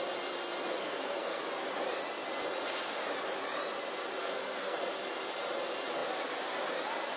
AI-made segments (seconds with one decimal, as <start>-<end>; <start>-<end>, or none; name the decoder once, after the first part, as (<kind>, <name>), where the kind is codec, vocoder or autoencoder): 0.8-1.4 (codec, SNAC); 4.2-4.8

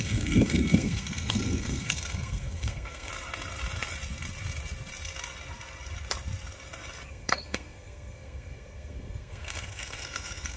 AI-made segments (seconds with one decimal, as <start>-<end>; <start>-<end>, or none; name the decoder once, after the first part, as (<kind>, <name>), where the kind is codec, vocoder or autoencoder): 0.0-3.1 (codec, SNAC); 7.1-10.6

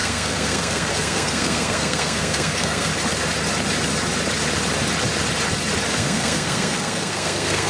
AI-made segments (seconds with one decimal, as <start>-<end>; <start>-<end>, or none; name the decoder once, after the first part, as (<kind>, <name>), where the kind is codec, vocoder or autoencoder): 0.0-2.9 (codec, SNAC); 5.9-7.7